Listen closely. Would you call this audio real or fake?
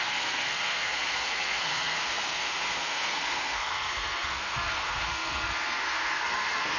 fake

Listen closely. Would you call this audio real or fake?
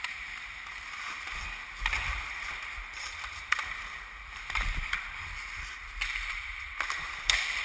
fake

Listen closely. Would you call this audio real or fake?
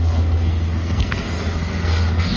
fake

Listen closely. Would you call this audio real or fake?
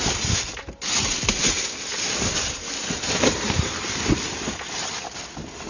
real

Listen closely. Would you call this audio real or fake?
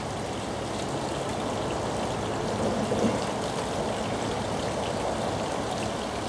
real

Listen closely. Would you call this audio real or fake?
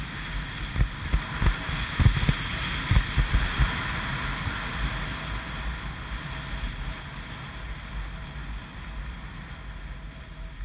real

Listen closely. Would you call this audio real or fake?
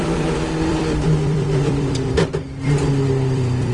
fake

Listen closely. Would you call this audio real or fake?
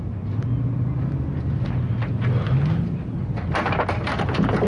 real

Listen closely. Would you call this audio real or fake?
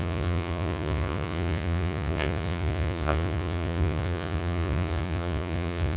fake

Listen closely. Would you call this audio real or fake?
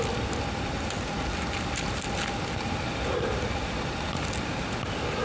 real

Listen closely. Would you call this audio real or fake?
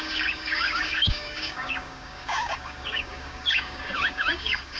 fake